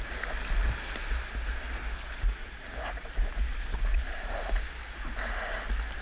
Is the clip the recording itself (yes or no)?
yes